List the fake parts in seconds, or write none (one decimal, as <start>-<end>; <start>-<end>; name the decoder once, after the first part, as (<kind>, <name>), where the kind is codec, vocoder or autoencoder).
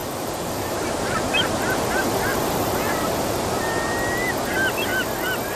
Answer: 0.0-1.9 (vocoder, BigVGAN v2); 2.3-3.3